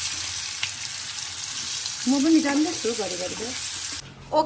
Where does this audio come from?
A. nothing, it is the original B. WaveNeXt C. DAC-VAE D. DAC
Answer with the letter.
A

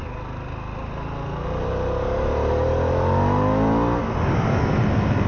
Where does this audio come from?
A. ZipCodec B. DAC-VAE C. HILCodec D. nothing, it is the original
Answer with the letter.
D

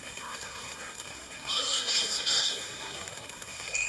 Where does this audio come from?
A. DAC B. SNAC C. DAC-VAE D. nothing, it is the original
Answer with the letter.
B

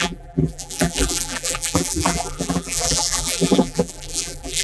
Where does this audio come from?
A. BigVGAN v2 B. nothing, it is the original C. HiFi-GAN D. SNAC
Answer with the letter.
A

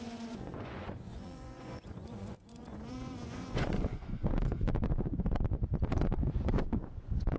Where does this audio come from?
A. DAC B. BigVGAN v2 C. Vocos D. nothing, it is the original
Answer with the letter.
C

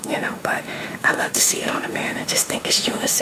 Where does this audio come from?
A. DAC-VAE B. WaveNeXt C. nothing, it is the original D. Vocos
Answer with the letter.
A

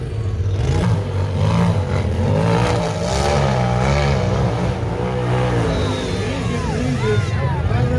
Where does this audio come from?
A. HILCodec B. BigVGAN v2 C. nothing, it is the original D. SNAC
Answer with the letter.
C